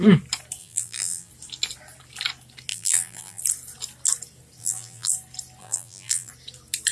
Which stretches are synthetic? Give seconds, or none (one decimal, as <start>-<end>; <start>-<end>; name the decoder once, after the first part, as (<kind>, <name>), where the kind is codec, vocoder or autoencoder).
0.6-1.3 (vocoder, BigVGAN v2); 2.7-3.4; 4.6-5.1; 5.6-6.3